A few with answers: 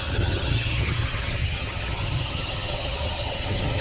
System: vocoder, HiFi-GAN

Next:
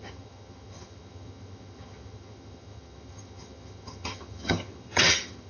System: vocoder, HiFi-GAN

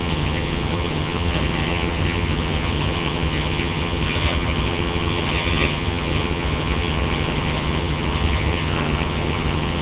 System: vocoder, HiFi-GAN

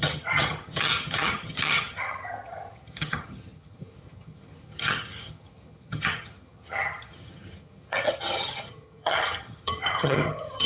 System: vocoder, HiFi-GAN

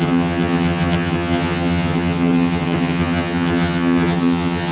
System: vocoder, HiFi-GAN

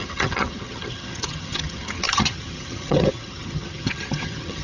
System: vocoder, HiFi-GAN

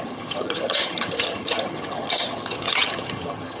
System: vocoder, HiFi-GAN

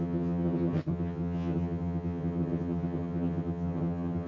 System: vocoder, HiFi-GAN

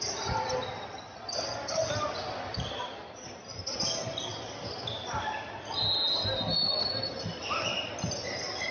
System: none